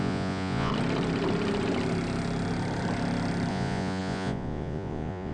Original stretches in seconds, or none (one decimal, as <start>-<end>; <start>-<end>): 0.7-3.5